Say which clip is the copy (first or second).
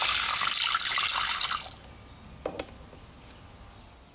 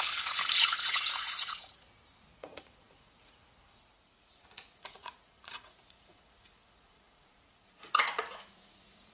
second